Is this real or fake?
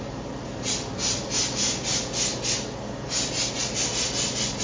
real